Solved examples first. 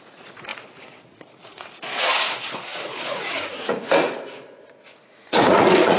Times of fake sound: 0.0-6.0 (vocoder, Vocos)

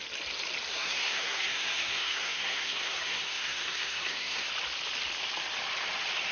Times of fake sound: 0.7-4.5 (codec, SNAC)

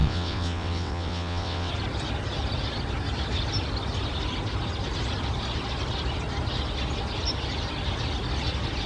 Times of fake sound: 0.0-1.7 (vocoder, WaveNeXt)

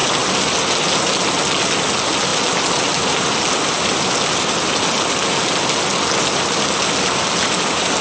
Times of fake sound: none

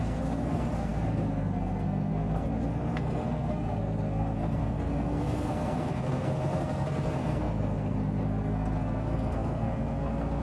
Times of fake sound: 0.0-10.4 (codec, SNAC)

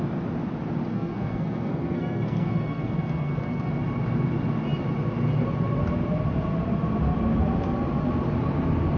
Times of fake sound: 0.9-3.7 (codec, SNAC)